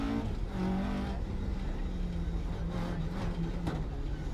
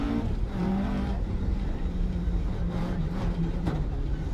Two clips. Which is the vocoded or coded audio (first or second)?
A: second